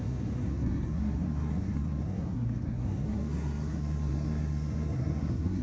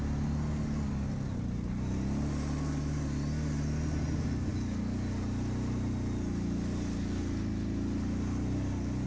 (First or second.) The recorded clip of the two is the second